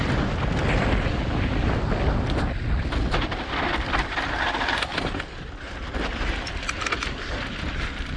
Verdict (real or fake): real